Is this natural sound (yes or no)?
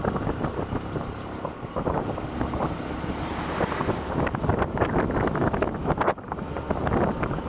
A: yes